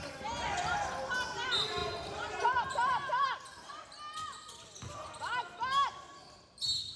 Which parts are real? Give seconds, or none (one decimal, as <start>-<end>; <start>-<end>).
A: 0.0-7.0